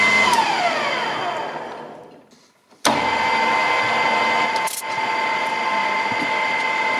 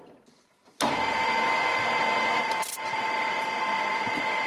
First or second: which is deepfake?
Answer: second